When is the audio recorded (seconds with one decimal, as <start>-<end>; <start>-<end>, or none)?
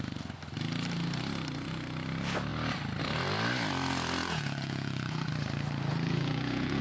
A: 0.0-4.2; 5.3-5.9